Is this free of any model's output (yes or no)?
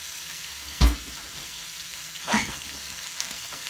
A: no